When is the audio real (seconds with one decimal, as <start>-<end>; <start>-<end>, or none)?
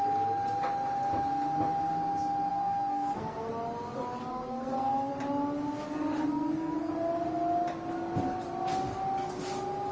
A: 0.0-2.5; 3.5-4.3; 5.1-6.3; 6.9-9.9